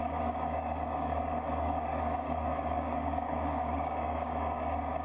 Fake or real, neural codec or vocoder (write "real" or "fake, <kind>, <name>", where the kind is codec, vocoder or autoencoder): fake, codec, DAC